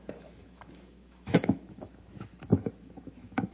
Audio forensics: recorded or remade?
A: remade